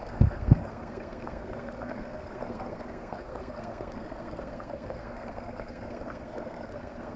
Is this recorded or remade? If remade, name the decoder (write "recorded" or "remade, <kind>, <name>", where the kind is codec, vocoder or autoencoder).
remade, codec, SNAC